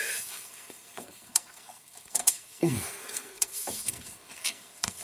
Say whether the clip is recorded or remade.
remade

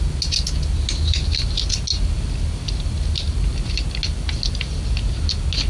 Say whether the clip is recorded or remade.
recorded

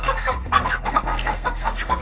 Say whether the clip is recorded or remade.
remade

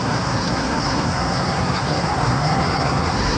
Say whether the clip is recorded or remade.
remade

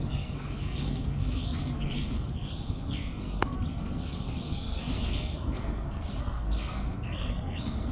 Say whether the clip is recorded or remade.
remade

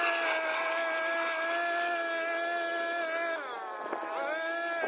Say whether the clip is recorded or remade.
recorded